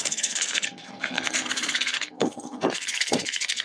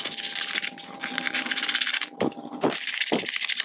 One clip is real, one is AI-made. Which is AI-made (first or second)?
first